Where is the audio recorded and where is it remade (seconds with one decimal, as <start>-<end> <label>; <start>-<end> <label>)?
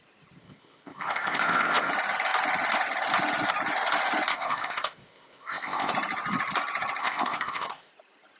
0.0-0.4 recorded; 0.4-1.9 remade; 1.9-4.3 recorded; 4.3-5.9 remade; 5.9-7.0 recorded; 7.0-7.9 remade; 7.9-8.4 recorded